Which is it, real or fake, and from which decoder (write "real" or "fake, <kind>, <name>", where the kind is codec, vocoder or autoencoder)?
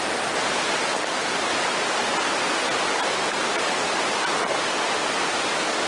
real